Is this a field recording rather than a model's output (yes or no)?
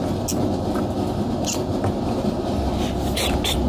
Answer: yes